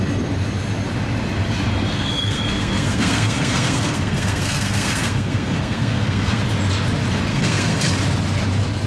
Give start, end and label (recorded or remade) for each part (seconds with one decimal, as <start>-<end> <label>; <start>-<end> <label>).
0.0-1.9 recorded; 1.9-6.4 remade; 6.4-7.3 recorded; 7.3-7.9 remade; 7.9-8.9 recorded